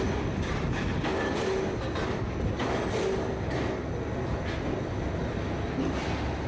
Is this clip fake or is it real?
real